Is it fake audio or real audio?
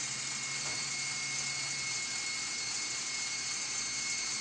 real